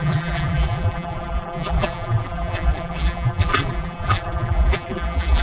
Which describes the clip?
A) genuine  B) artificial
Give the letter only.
B